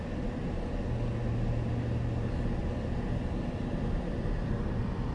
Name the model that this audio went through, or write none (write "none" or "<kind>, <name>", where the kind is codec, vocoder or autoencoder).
none